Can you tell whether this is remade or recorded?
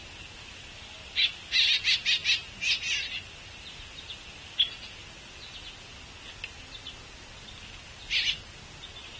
recorded